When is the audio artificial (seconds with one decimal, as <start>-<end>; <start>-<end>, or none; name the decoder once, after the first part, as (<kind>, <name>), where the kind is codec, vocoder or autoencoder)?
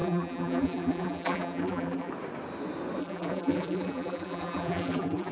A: 0.0-2.1 (vocoder, BigVGAN v2); 3.0-5.3